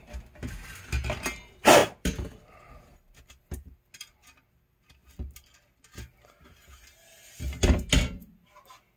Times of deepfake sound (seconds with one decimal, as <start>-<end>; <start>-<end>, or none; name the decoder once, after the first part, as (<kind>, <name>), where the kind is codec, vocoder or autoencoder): 1.8-2.7 (vocoder, BigVGAN v2); 5.0-5.8